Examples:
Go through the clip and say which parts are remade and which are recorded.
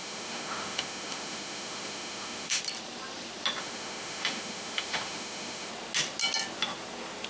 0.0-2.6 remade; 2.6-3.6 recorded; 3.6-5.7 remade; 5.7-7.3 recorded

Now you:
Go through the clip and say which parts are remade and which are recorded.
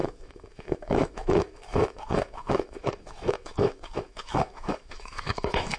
0.0-5.8 remade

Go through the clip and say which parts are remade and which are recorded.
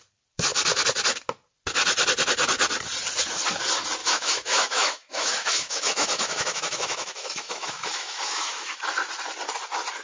0.0-4.0 recorded; 4.0-8.8 remade; 8.8-10.0 recorded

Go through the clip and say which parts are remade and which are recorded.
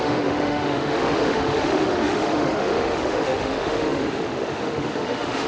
0.0-5.5 remade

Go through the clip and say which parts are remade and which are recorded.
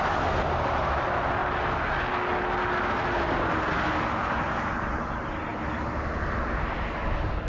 0.0-7.5 recorded